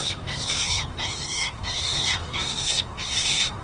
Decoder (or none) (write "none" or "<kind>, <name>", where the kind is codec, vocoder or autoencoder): codec, SNAC